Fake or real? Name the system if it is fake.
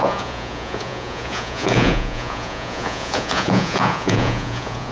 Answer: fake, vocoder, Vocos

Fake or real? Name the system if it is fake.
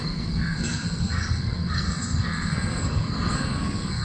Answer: fake, codec, SNAC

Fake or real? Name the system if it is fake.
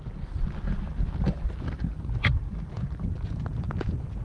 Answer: real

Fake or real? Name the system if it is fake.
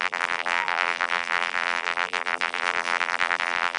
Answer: fake, vocoder, BigVGAN v2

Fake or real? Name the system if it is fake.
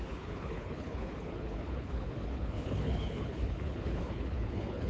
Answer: fake, codec, HILCodec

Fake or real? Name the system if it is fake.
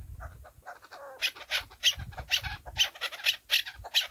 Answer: real